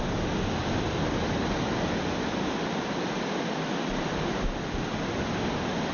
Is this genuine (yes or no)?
yes